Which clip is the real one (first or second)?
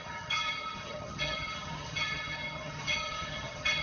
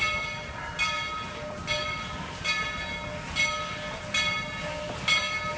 second